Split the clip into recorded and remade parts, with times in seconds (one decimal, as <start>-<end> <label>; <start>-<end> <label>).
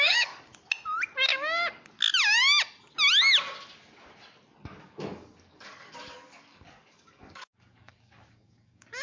0.0-0.5 remade; 0.5-4.8 recorded; 4.8-9.0 remade